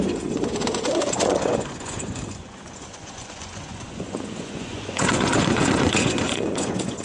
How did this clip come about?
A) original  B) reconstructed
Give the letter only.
B